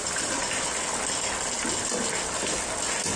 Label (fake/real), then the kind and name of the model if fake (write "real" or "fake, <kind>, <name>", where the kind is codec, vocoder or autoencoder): real